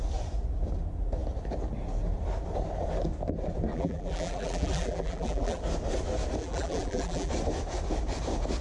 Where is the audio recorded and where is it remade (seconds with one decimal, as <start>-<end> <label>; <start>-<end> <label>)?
0.0-3.7 recorded; 3.7-5.6 remade; 5.6-6.4 recorded; 6.4-7.3 remade; 7.3-8.6 recorded